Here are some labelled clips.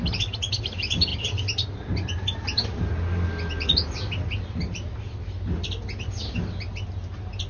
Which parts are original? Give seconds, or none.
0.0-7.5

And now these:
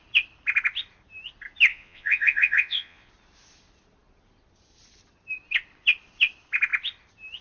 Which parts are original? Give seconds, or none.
0.0-1.7; 3.1-7.4